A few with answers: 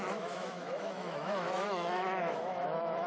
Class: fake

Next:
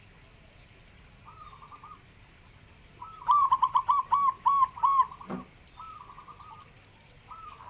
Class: real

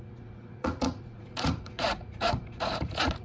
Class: fake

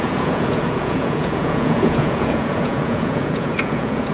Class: fake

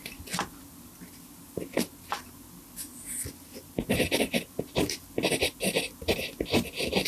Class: real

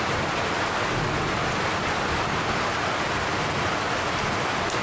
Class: real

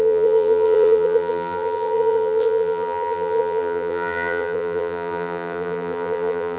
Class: fake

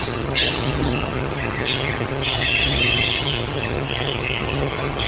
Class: fake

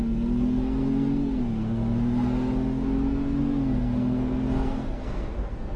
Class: fake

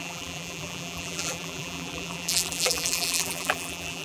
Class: fake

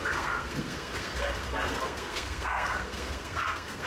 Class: fake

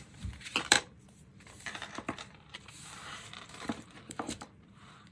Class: fake